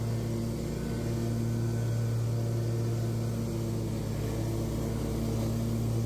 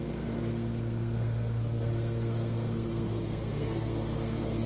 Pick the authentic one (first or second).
first